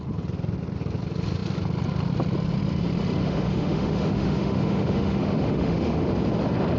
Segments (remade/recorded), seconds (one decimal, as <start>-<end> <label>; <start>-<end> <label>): 0.0-3.2 recorded; 3.2-6.1 remade; 6.1-6.8 recorded